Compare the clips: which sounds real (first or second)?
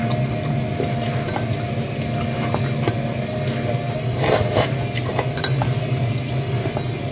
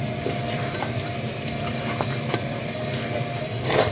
first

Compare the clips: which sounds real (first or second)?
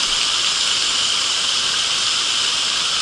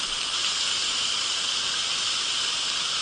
second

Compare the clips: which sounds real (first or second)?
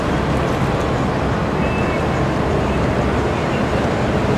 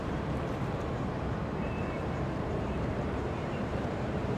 first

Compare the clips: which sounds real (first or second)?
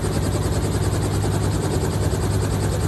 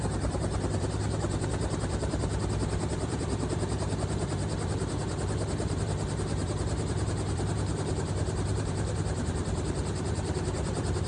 first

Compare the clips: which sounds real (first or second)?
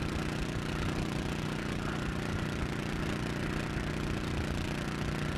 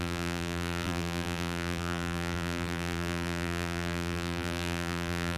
first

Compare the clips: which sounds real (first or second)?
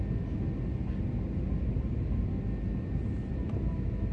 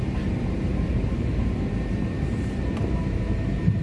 first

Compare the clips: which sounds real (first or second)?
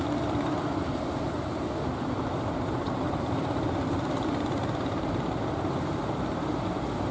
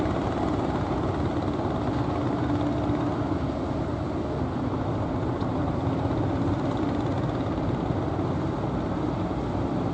second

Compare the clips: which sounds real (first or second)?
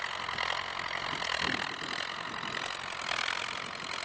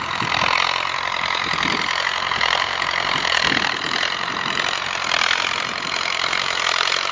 first